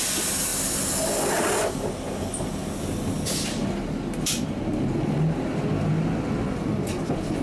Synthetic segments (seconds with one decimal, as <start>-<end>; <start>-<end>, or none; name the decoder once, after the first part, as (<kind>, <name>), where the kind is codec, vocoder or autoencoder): none

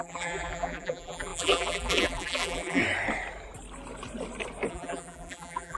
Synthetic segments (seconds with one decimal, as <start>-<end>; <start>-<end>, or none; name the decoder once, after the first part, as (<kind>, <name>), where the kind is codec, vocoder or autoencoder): 0.0-2.8 (vocoder, BigVGAN v2); 4.7-5.8

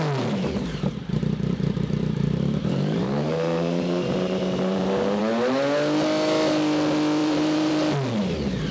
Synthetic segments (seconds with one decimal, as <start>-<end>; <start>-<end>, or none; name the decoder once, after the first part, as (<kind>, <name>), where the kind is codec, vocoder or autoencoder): 1.0-5.2 (vocoder, BigVGAN v2); 7.2-7.7

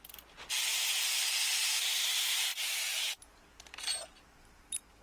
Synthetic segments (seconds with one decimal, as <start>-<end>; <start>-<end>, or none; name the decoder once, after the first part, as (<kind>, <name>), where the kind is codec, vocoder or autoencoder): 0.0-5.0 (vocoder, BigVGAN v2)